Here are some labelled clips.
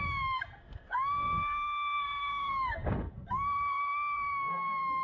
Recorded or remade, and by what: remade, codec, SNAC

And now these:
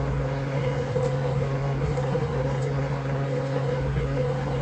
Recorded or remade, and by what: remade, codec, SNAC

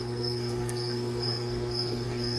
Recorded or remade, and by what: remade, codec, SNAC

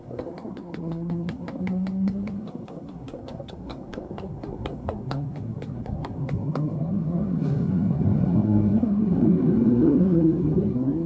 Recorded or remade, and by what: remade, codec, SNAC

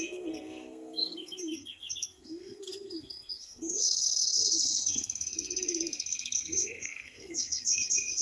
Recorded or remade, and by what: remade, codec, SNAC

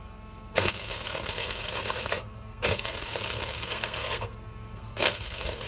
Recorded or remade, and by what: remade, codec, SNAC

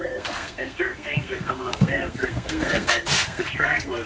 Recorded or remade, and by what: remade, codec, SNAC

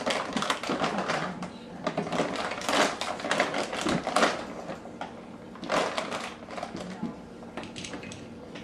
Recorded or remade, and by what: recorded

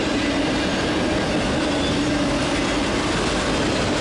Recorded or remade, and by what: recorded